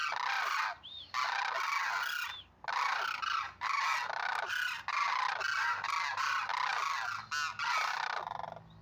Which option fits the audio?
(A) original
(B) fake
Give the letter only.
A